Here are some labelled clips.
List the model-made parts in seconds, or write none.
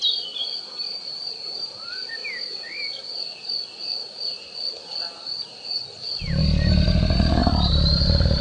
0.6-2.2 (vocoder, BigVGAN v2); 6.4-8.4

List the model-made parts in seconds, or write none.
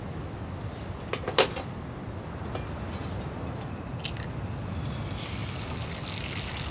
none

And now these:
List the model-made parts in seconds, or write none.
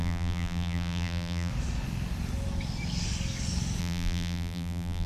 0.0-1.5 (vocoder, BigVGAN v2); 3.8-5.1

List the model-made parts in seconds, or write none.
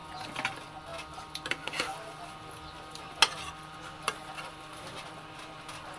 none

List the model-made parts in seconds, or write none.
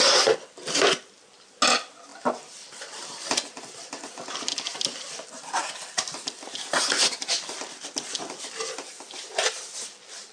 none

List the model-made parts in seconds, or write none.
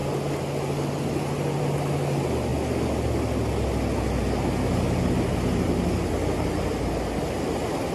none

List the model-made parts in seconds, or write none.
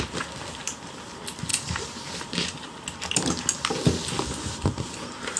1.5-2.1 (vocoder, BigVGAN v2)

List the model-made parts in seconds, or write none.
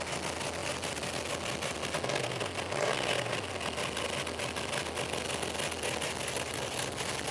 none